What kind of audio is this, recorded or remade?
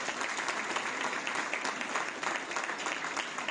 recorded